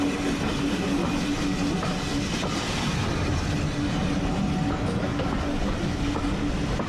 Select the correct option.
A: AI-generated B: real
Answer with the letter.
B